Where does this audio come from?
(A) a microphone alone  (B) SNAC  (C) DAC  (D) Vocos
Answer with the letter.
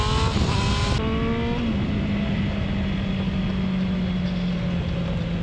A